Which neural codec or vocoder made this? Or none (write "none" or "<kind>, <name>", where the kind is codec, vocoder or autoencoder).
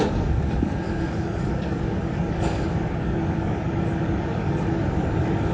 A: codec, DAC